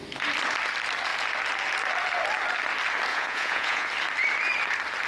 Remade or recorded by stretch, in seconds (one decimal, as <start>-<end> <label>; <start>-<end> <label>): 0.0-3.1 recorded; 3.1-3.9 remade; 3.9-5.1 recorded